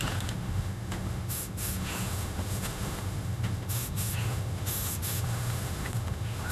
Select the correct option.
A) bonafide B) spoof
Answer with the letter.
B